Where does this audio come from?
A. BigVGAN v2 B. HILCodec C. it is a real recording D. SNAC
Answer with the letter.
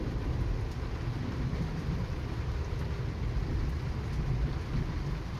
C